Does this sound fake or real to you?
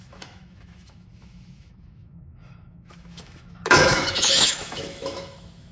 fake